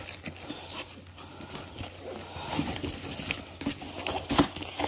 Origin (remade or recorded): recorded